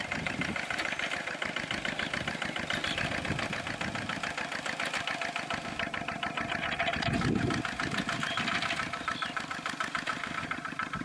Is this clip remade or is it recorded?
recorded